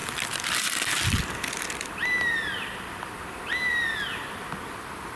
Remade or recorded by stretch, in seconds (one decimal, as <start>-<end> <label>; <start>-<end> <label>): 0.0-5.2 recorded